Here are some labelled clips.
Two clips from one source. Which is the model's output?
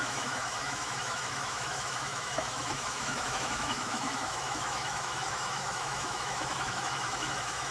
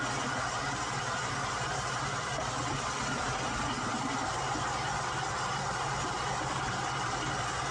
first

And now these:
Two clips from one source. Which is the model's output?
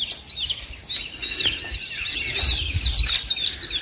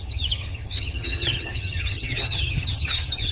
second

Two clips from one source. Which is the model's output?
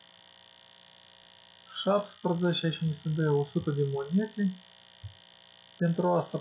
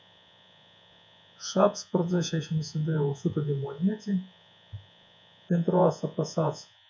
second